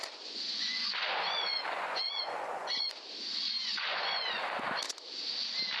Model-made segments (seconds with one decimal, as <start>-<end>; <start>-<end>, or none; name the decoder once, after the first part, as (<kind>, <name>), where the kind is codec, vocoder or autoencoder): 0.0-2.9 (vocoder, Vocos); 3.6-4.5